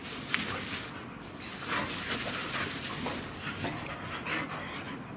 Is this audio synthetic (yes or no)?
no